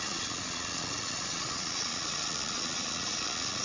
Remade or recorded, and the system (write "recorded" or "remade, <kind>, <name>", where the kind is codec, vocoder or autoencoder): remade, vocoder, Vocos